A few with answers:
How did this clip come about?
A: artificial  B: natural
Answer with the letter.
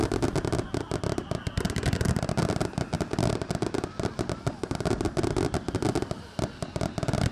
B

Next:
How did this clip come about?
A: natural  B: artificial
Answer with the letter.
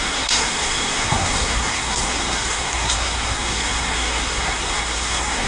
B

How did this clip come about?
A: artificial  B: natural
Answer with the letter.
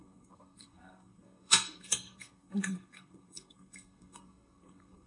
A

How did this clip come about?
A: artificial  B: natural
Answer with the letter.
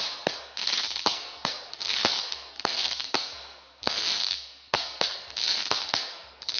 A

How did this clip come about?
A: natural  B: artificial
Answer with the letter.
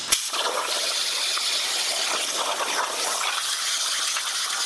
A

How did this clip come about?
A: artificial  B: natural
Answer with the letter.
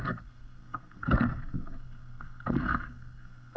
A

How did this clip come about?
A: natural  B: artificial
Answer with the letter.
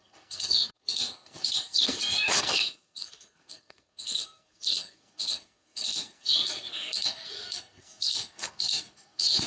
B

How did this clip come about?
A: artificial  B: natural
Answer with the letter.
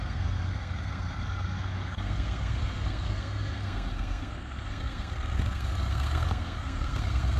A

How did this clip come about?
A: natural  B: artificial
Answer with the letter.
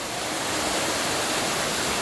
A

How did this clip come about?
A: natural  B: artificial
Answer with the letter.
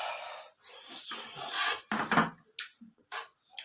A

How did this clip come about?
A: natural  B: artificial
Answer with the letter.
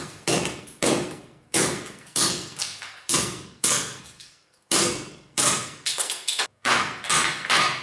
B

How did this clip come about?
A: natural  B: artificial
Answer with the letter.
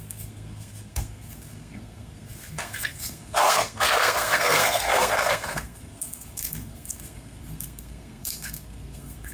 B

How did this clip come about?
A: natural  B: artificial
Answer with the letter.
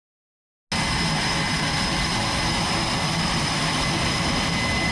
A